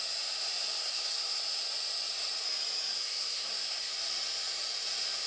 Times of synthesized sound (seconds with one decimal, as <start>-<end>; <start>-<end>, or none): 0.8-1.4; 2.9-3.9